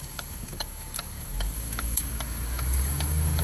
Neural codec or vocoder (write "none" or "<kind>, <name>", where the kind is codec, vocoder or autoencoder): codec, DAC